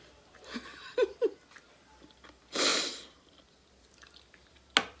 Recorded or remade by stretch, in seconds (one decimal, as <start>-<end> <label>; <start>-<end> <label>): 0.0-0.7 recorded; 0.7-1.3 remade; 1.3-2.7 recorded; 2.7-3.9 remade; 3.9-5.0 recorded